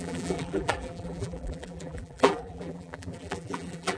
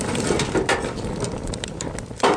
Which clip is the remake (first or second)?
first